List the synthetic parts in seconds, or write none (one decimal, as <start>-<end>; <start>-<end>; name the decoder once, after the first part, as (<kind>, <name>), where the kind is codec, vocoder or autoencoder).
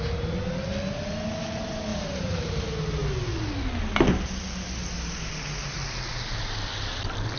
1.9-2.5 (vocoder, BigVGAN v2)